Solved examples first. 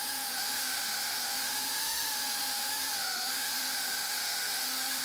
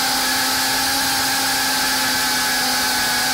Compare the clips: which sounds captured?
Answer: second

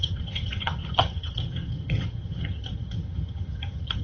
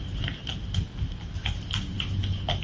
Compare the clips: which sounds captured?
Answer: second